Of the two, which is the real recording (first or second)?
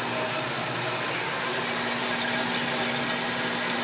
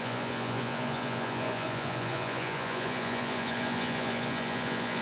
first